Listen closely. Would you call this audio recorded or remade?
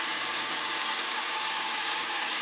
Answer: remade